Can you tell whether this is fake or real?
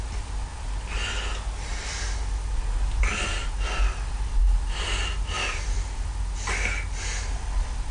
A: real